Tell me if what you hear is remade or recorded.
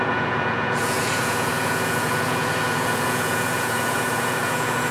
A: remade